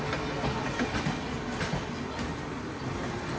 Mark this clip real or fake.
real